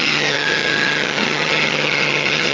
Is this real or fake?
fake